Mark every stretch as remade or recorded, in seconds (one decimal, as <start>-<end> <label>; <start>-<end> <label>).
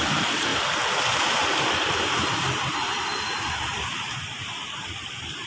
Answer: 0.0-5.5 remade